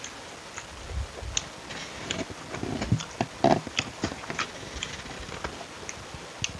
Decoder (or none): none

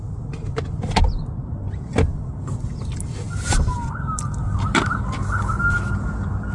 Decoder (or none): none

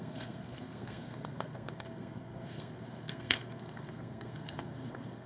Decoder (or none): codec, SNAC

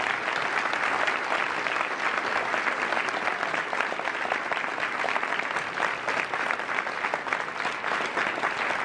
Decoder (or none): none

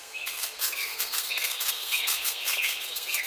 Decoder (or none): codec, SNAC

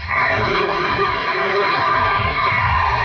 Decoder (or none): codec, SNAC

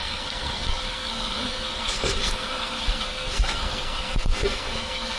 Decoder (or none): codec, SNAC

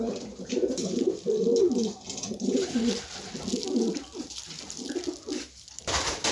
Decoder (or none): none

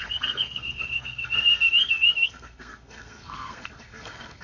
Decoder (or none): codec, SNAC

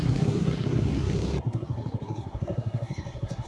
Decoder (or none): codec, SNAC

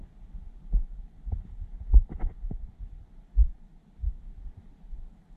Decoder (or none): none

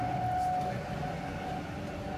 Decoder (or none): none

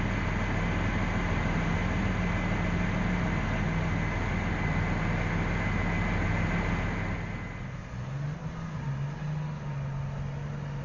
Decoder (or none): none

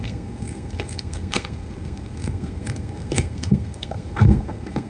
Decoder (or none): codec, SNAC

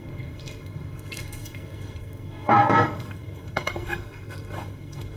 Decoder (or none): codec, SNAC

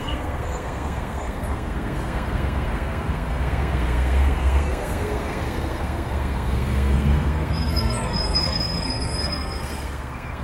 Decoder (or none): codec, SNAC